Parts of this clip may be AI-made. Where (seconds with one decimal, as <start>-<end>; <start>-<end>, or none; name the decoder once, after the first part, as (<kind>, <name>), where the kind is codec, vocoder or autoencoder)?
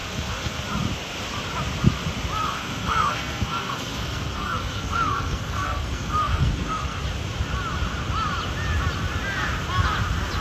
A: 0.0-0.6 (codec, SNAC); 2.4-7.0